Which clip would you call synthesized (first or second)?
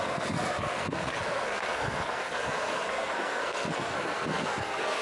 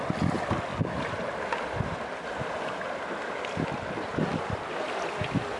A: first